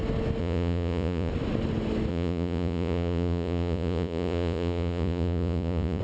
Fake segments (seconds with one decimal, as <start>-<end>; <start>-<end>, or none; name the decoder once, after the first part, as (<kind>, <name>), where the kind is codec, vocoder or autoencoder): 0.4-1.3 (vocoder, Vocos); 2.1-6.0